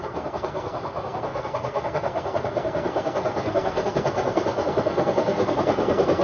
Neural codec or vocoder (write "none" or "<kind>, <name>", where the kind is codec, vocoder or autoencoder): codec, SNAC